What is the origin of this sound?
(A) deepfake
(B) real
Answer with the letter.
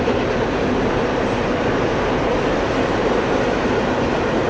A